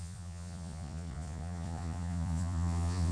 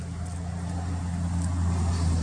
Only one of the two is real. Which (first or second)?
second